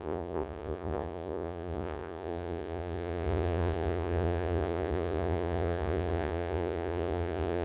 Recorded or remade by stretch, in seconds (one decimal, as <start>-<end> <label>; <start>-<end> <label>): 0.0-7.6 remade